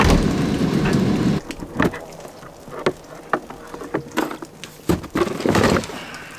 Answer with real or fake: real